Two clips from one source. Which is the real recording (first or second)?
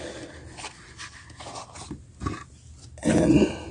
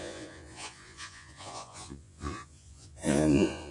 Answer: first